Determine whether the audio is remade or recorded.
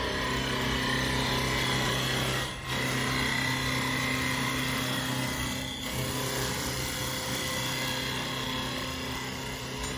recorded